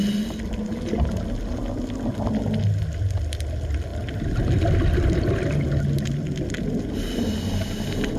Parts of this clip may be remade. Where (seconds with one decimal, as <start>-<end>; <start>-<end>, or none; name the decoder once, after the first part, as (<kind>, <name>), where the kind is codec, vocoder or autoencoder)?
none